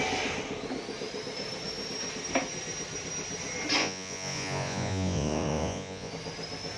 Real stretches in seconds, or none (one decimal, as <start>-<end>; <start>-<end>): 0.0-3.8; 6.1-6.8